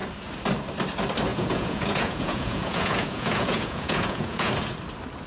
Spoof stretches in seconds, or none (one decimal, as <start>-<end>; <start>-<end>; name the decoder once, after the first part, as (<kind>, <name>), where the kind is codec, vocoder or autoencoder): 1.3-4.5 (vocoder, Vocos)